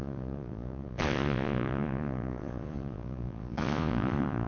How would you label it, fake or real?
fake